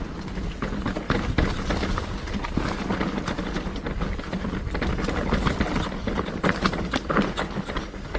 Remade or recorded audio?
recorded